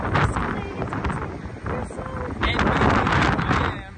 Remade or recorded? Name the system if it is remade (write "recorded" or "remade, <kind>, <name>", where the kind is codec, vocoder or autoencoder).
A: recorded